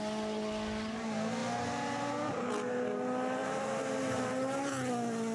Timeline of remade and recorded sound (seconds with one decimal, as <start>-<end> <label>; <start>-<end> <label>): 0.0-5.3 recorded